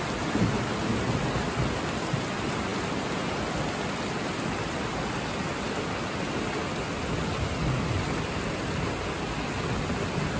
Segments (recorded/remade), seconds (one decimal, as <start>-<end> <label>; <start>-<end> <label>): 0.0-10.4 recorded